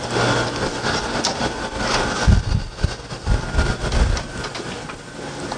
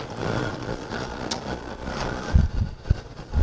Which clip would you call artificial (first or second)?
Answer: second